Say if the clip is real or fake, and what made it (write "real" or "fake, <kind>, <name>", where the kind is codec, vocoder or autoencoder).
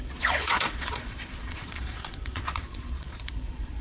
fake, vocoder, Vocos